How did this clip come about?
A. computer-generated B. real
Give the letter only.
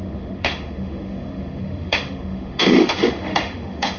A